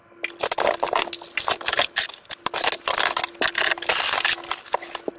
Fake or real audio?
real